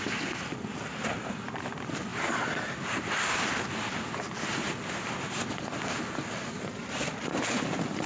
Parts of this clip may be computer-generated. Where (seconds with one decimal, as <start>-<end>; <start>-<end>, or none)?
2.1-3.3; 6.8-7.4